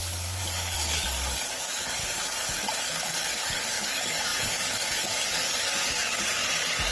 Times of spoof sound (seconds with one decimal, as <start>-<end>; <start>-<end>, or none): 0.0-2.0; 2.8-6.9